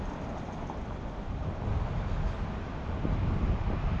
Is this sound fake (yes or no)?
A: no